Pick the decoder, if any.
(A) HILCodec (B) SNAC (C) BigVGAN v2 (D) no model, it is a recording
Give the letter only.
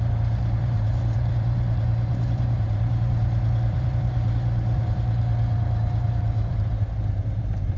C